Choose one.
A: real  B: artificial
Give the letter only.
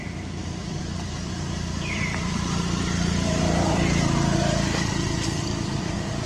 B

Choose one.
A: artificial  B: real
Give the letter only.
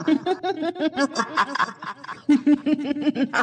B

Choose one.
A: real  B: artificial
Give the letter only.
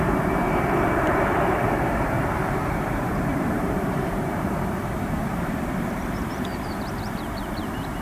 B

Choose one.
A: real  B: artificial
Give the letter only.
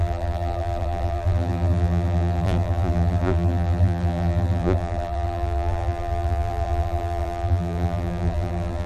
B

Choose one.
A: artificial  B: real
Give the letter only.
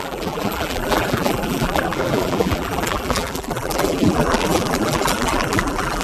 A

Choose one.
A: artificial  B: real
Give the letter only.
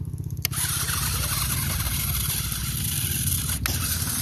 B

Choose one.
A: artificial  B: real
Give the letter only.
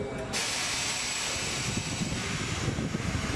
B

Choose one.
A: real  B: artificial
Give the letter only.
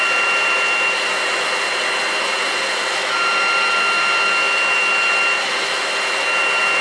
A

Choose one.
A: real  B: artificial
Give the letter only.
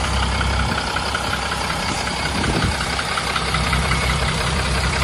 B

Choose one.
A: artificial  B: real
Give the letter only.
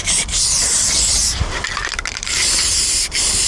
A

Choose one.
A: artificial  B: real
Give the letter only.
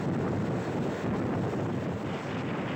B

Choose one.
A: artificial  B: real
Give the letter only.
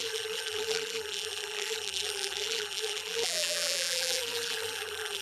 A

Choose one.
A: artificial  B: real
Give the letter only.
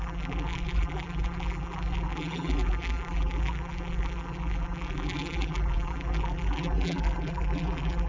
A